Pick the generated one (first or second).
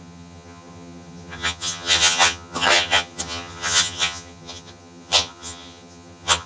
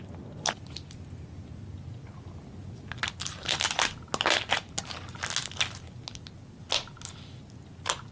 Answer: first